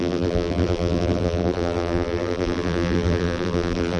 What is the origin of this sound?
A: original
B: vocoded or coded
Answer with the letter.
B